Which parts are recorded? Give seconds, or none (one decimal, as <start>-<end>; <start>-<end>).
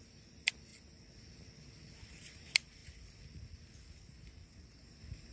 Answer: 0.0-5.3